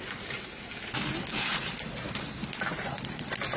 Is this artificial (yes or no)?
no